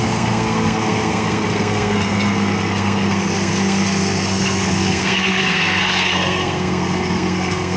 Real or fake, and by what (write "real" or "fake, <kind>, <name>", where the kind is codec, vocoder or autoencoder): fake, codec, SNAC